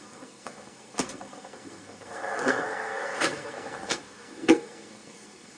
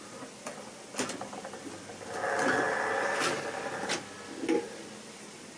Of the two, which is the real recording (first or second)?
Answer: second